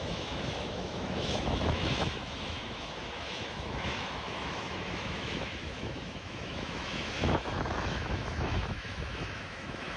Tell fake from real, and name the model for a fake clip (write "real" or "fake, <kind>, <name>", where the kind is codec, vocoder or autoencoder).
fake, autoencoder, DAC-VAE